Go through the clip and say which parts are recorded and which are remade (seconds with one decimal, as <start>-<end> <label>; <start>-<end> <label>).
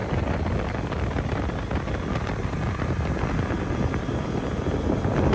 0.0-5.3 recorded